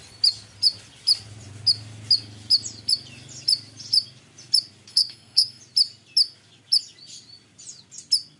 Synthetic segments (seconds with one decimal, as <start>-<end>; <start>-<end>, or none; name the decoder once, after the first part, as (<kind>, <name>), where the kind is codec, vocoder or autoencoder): 4.9-5.6 (codec, SNAC)